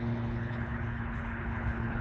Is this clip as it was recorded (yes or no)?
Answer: no